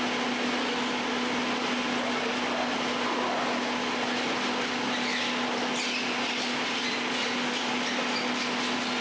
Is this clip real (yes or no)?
yes